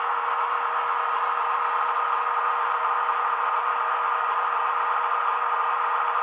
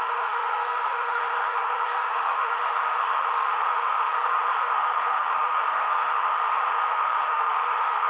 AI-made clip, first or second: second